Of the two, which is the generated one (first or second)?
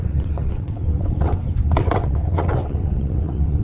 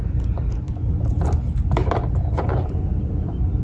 first